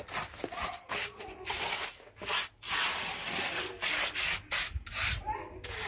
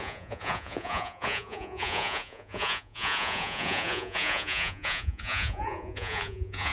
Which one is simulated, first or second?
second